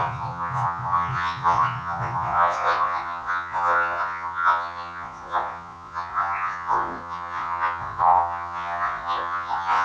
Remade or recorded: remade